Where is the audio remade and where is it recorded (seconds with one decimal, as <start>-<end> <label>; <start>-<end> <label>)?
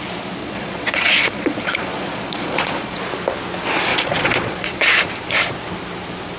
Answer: 0.0-0.4 recorded; 0.4-3.0 remade; 3.0-3.9 recorded; 3.9-4.8 remade; 4.8-6.4 recorded